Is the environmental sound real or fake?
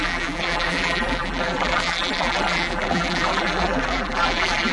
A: fake